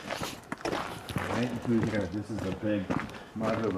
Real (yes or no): yes